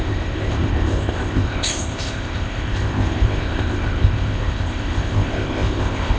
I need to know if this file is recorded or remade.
remade